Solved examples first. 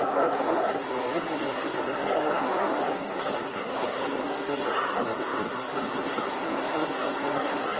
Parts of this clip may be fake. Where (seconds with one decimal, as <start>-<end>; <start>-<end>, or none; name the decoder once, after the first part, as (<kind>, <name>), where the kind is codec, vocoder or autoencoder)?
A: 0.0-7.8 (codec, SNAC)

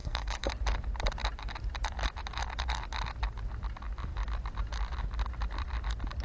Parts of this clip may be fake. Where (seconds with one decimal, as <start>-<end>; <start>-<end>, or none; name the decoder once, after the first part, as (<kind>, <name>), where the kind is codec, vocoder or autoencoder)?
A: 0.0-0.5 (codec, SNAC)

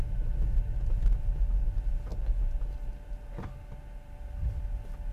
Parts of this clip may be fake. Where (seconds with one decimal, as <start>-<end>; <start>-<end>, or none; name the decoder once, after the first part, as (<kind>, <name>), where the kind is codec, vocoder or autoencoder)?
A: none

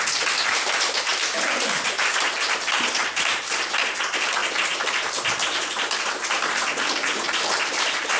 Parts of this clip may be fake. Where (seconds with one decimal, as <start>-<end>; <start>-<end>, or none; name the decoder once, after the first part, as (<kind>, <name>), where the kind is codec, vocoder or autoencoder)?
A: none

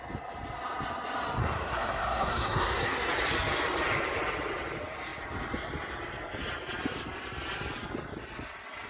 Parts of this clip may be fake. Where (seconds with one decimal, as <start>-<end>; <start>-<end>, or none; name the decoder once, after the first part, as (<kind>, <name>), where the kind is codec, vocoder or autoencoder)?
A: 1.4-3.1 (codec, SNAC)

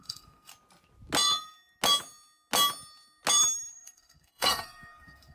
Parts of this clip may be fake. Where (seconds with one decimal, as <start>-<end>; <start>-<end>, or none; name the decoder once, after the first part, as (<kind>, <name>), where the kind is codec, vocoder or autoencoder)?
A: 0.0-0.5 (codec, SNAC); 3.7-5.3